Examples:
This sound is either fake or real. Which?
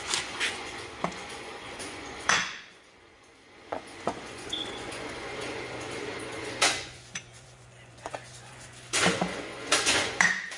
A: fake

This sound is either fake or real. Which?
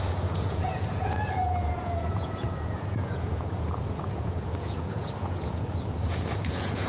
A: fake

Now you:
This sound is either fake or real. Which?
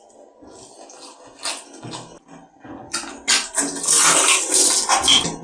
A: real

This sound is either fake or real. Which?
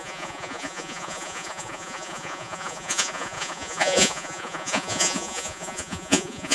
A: fake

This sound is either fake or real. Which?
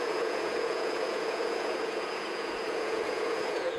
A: fake